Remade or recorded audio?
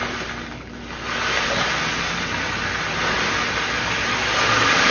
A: recorded